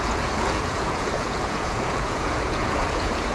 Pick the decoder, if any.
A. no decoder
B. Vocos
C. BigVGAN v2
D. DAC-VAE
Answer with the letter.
B